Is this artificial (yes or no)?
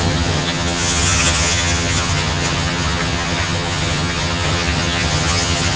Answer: yes